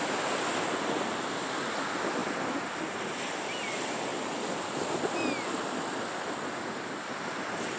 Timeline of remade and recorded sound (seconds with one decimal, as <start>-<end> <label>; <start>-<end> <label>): 0.0-7.8 recorded